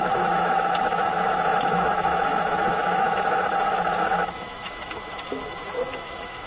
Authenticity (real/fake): fake